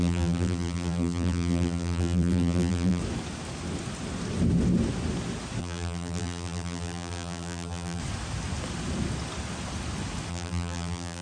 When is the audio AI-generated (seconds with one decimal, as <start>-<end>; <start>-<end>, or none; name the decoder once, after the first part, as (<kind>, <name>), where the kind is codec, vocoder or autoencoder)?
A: 0.0-3.0 (vocoder, BigVGAN v2); 5.6-8.0; 10.3-11.2